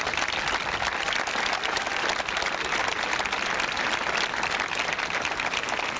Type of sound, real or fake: real